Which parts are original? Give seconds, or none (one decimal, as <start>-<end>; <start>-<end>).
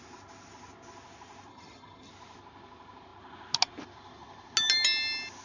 0.0-1.5; 2.1-5.4